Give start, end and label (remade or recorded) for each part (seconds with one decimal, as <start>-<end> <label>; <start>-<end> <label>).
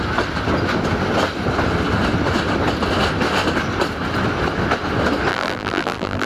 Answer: 0.0-5.3 recorded; 5.3-6.3 remade